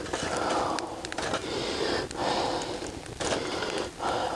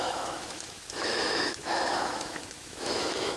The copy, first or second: second